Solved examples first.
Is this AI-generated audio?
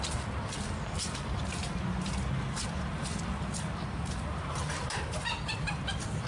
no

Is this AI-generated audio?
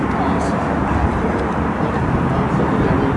no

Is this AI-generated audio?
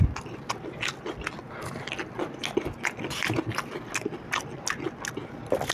no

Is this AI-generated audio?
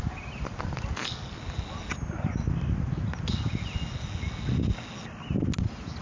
no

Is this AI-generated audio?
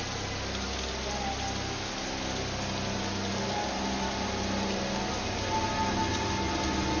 no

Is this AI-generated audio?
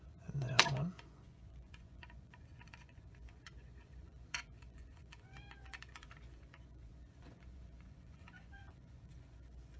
yes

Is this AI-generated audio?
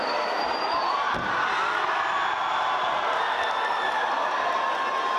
no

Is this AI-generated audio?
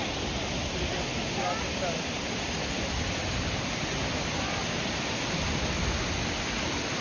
no